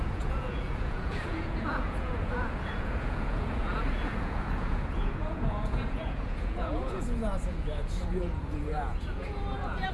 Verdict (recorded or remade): remade